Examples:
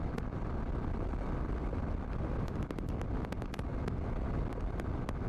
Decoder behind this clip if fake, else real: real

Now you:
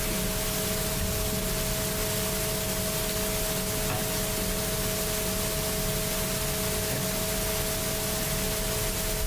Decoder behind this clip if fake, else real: real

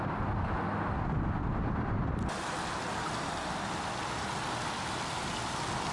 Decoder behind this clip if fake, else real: real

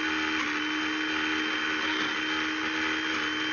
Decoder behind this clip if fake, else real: real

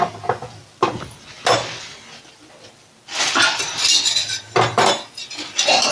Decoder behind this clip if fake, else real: real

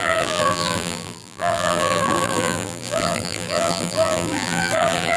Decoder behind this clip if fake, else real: fake, vocoder, BigVGAN v2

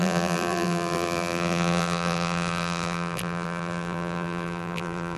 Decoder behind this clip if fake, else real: fake, vocoder, BigVGAN v2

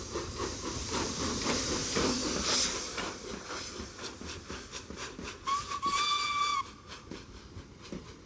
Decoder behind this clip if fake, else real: fake, vocoder, BigVGAN v2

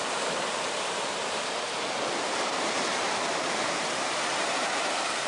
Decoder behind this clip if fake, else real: fake, vocoder, BigVGAN v2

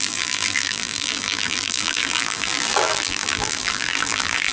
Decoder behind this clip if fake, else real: fake, vocoder, BigVGAN v2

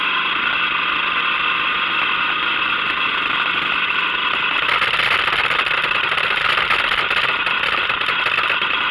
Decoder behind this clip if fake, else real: real